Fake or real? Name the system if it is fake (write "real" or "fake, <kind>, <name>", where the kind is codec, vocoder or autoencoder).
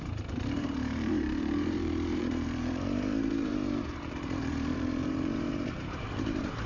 fake, vocoder, BigVGAN v2